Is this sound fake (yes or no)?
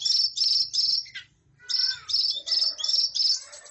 no